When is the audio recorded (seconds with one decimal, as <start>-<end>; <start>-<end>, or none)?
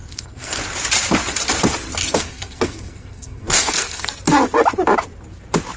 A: 0.6-2.0; 4.1-5.8